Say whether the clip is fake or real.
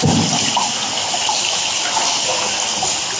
real